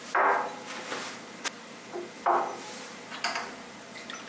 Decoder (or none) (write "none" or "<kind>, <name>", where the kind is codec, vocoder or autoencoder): none